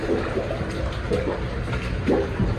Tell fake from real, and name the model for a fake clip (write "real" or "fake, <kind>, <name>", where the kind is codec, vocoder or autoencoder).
fake, vocoder, BigVGAN v2